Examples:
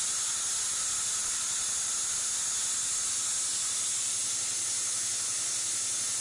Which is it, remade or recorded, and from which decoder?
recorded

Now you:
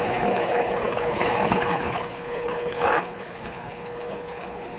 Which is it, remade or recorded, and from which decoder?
remade, codec, HILCodec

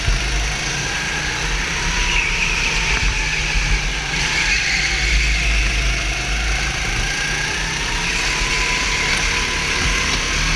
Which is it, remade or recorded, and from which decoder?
recorded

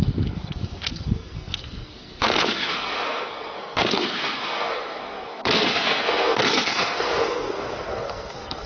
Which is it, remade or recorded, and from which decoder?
remade, codec, SNAC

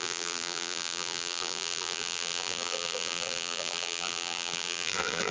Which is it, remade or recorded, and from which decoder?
remade, vocoder, BigVGAN v2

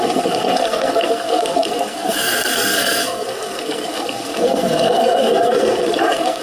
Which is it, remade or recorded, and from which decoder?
remade, codec, SNAC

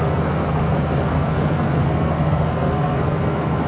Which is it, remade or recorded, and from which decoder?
remade, codec, SNAC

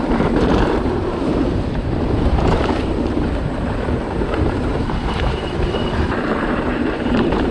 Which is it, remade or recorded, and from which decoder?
remade, vocoder, BigVGAN v2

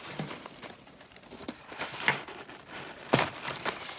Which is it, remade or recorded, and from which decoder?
remade, vocoder, BigVGAN v2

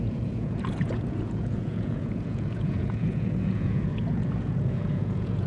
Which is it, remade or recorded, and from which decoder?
remade, vocoder, Vocos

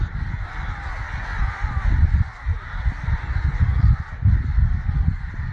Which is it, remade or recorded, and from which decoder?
remade, vocoder, BigVGAN v2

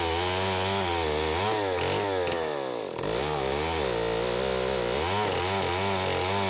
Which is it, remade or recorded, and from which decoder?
recorded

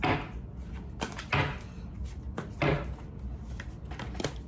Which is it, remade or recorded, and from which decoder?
recorded